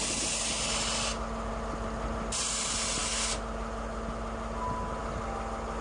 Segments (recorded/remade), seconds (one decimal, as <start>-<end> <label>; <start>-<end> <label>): 0.0-5.8 recorded